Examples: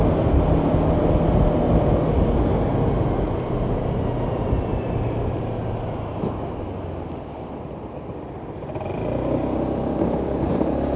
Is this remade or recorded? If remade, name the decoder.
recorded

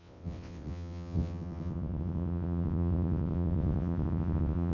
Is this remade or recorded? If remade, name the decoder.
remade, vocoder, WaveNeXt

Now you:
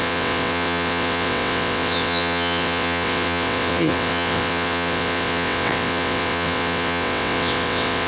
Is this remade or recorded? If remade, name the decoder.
remade, vocoder, WaveNeXt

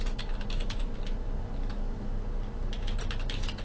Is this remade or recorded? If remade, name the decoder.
recorded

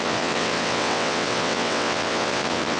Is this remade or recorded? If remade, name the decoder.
remade, vocoder, WaveNeXt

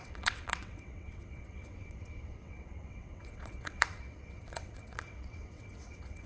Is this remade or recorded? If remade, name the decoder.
remade, vocoder, WaveNeXt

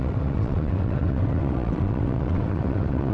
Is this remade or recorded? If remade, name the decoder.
remade, vocoder, WaveNeXt